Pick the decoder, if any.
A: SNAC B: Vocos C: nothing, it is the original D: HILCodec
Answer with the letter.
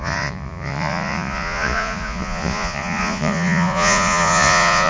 B